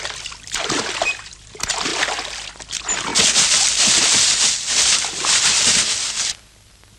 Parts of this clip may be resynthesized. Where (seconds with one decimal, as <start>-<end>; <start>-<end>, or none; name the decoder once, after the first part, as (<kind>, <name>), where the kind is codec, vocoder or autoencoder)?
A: 0.0-1.9 (vocoder, BigVGAN v2); 2.5-3.1; 3.8-7.0